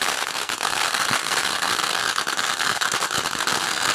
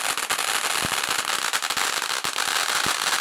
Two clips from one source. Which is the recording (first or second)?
second